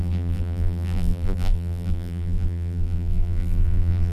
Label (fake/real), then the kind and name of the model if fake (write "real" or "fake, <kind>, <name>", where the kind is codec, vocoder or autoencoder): fake, vocoder, BigVGAN v2